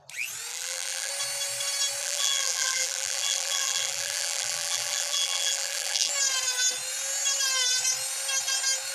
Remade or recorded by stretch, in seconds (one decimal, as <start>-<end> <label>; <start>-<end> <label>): 0.0-0.5 recorded; 0.5-1.1 remade; 1.1-2.0 recorded; 2.0-6.1 remade; 6.1-8.9 recorded